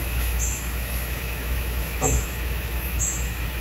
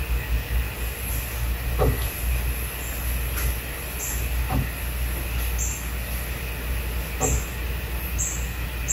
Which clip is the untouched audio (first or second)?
second